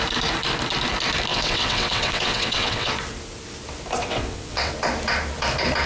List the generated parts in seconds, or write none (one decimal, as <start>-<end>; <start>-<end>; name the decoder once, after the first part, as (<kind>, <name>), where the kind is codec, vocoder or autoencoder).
1.3-2.9 (vocoder, WaveNeXt); 4.0-4.7